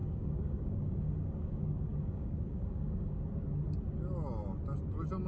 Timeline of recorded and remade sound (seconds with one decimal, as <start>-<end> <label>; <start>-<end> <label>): 0.0-3.2 remade; 3.2-5.3 recorded

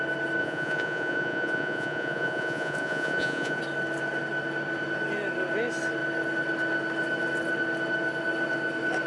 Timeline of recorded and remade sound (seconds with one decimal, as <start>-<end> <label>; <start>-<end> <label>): 0.0-0.4 recorded; 0.4-3.6 remade; 3.6-9.1 recorded

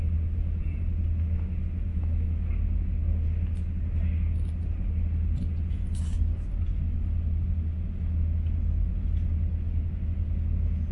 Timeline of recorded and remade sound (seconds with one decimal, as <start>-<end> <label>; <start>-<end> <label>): 0.0-1.9 recorded; 1.9-2.5 remade; 2.5-10.9 recorded

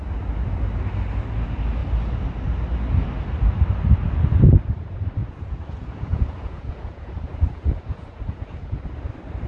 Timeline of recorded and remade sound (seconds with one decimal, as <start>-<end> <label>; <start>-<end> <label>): 0.0-5.2 recorded; 5.2-8.8 remade; 8.8-9.5 recorded

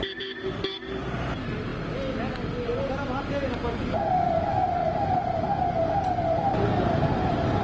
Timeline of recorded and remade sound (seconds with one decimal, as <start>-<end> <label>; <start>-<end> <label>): 0.0-4.8 recorded; 4.8-5.6 remade; 5.6-7.6 recorded

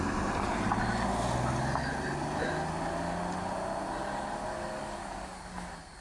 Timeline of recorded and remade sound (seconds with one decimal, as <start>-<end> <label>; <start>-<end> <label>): 0.0-4.0 recorded; 4.0-6.0 remade

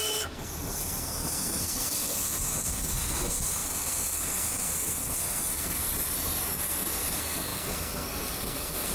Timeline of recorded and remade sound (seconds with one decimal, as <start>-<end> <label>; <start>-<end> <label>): 0.0-5.9 remade; 5.9-6.5 recorded; 6.5-8.9 remade